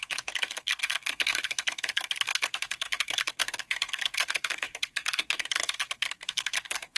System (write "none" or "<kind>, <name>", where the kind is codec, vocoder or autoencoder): codec, SNAC